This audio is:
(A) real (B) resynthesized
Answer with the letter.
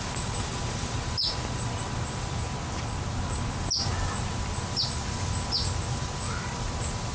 A